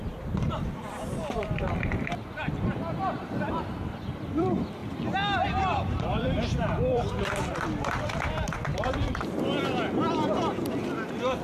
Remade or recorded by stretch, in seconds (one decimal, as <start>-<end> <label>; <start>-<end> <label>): 0.0-4.8 remade; 4.8-5.6 recorded; 5.6-11.4 remade